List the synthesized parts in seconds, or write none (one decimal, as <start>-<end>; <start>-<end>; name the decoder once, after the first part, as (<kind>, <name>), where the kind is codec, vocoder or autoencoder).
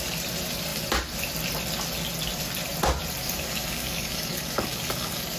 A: 3.2-5.4 (codec, DAC)